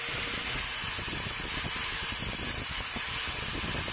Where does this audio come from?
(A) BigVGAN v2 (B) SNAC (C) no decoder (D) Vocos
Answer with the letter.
C